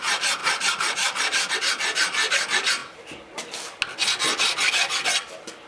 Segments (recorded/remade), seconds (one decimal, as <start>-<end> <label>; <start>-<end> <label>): 0.0-0.4 recorded; 0.4-1.5 remade; 1.5-5.7 recorded